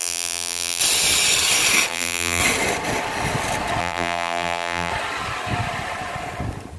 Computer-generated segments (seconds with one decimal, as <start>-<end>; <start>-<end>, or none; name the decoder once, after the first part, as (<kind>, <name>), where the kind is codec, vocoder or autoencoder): 0.0-0.8 (vocoder, BigVGAN v2); 1.9-2.4; 3.8-4.9